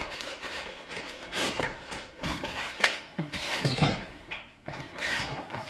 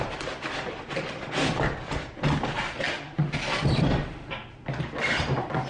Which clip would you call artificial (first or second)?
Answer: first